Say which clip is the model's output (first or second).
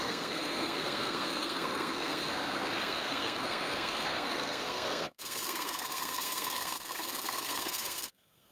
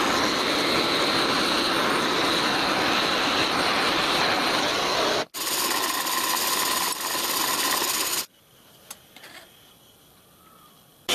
first